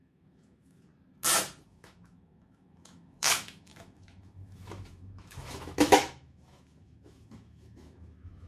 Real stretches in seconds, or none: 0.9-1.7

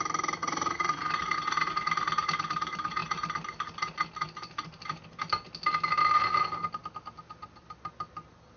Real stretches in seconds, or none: 0.0-0.4; 1.0-8.6

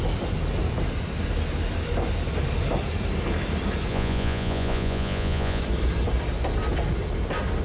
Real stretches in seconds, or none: 0.0-3.9; 5.6-7.6

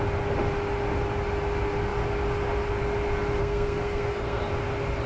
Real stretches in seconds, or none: 0.0-3.4; 4.4-5.1

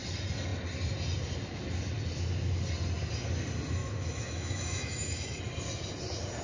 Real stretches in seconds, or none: 0.0-3.8; 5.4-6.4

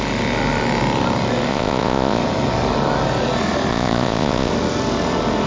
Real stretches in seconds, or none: 0.0-1.5; 2.2-3.7; 4.5-5.5